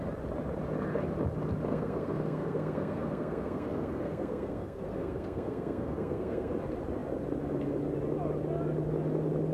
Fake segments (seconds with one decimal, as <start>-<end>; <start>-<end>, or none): 1.7-6.5